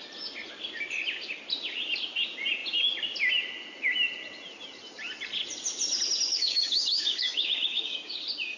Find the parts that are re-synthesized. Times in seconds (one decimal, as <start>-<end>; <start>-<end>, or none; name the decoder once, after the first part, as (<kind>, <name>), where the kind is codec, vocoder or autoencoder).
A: 6.3-8.2 (codec, DAC)